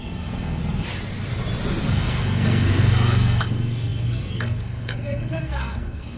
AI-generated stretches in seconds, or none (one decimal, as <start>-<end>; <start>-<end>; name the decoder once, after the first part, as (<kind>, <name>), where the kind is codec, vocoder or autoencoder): 0.0-0.6 (codec, SNAC); 1.9-6.2

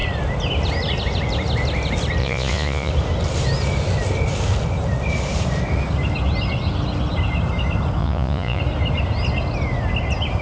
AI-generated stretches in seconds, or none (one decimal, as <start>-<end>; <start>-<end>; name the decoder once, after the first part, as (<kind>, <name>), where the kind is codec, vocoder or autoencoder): 2.2-2.9 (vocoder, Vocos); 8.0-8.6

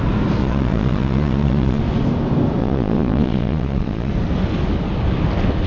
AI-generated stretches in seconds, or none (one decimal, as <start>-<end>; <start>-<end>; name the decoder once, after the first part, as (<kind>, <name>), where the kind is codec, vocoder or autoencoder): 0.4-1.8 (vocoder, Vocos); 2.6-4.1

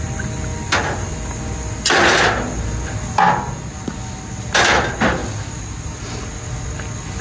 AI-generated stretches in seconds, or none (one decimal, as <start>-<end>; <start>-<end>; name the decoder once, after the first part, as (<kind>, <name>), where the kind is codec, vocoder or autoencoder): none